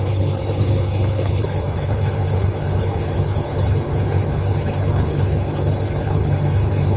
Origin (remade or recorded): remade